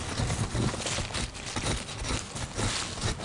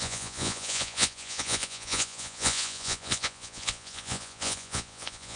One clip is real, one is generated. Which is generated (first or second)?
second